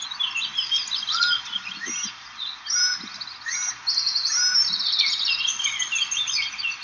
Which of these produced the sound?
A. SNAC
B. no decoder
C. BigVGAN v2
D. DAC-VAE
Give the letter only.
B